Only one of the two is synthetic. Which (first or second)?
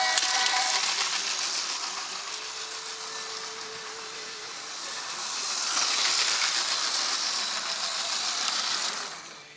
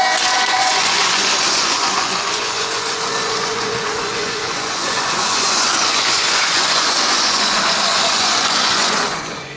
second